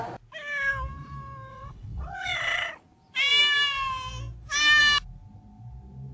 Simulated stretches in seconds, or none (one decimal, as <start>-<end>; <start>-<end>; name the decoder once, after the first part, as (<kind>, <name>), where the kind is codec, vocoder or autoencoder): 1.5-2.7 (vocoder, WaveNeXt)